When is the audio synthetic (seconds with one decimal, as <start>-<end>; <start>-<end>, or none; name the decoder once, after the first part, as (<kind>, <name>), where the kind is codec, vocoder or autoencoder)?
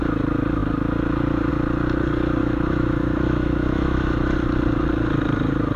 2.4-4.1 (autoencoder, DAC-VAE)